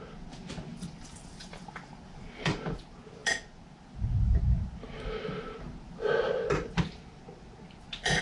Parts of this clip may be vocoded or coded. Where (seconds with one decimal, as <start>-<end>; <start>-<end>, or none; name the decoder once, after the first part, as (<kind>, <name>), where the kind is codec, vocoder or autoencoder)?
0.7-2.6 (vocoder, BigVGAN v2)